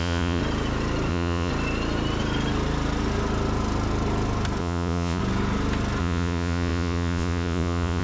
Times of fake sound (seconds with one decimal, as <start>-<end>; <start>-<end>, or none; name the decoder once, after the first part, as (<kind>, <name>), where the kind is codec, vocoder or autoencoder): 0.0-0.4 (vocoder, Vocos); 1.1-1.5; 4.6-5.2; 6.0-8.0